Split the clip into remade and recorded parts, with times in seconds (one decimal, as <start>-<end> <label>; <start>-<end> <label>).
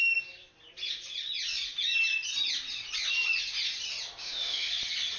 0.0-4.2 recorded; 4.2-4.7 remade; 4.7-5.2 recorded